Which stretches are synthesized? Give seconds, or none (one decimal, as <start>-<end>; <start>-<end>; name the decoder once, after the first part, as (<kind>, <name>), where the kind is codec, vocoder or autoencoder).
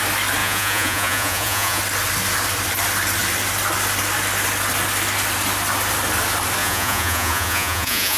0.4-1.8 (vocoder, Vocos); 6.6-8.2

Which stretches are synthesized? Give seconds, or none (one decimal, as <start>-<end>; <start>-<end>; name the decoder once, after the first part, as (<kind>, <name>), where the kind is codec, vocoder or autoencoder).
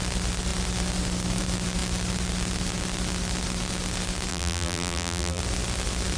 4.3-5.4 (vocoder, BigVGAN v2)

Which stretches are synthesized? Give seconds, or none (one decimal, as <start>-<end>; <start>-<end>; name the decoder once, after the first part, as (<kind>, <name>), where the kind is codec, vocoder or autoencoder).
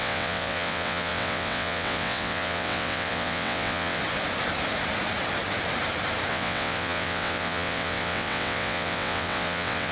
0.0-4.0 (vocoder, WaveNeXt); 6.3-9.9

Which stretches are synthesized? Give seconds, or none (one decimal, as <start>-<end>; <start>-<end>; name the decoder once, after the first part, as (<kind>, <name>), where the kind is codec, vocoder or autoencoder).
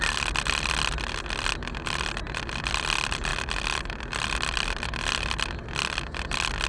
none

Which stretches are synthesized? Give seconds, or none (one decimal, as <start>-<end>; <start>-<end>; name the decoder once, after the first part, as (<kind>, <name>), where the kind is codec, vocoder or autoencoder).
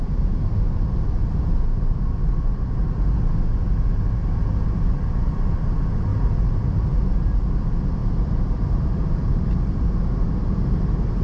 6.1-6.9 (vocoder, BigVGAN v2); 8.0-11.2